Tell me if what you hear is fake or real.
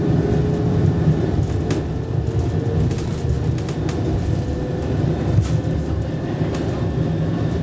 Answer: real